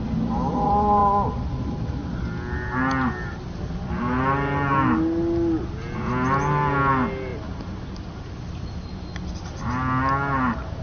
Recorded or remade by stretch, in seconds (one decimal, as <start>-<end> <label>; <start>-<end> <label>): 0.0-10.8 recorded